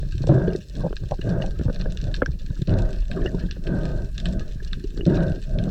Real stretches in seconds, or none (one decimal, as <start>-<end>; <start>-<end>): 0.0-5.7